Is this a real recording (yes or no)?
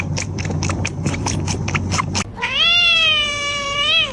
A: no